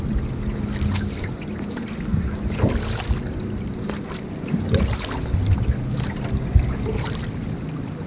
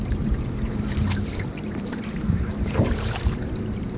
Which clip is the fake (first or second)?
second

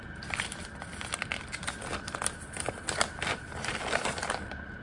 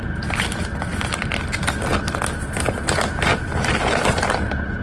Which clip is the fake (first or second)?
first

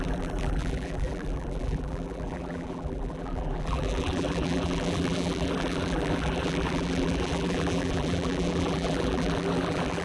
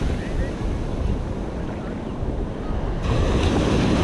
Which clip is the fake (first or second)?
first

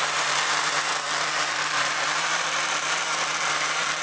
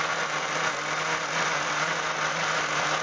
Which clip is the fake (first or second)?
first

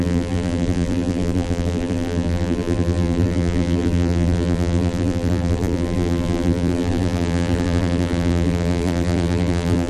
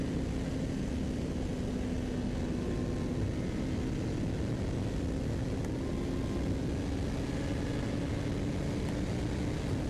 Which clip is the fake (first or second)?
first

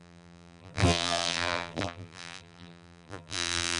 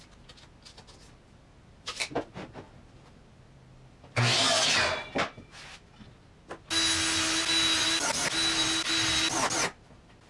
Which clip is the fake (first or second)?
first